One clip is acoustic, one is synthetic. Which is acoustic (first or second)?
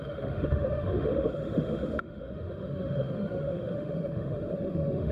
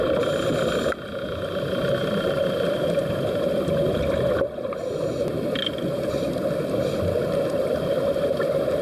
second